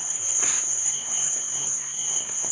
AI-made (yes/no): yes